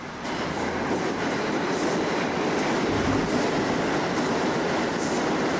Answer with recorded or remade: recorded